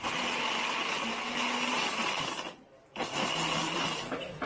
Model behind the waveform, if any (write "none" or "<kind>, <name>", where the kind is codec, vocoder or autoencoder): none